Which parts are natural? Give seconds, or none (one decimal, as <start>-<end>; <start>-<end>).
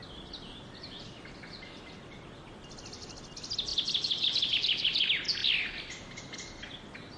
0.0-7.2